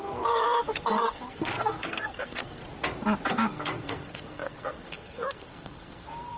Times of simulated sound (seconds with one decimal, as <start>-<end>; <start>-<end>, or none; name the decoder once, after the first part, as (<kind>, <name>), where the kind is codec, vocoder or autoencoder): 0.0-2.6 (codec, SNAC); 3.3-6.4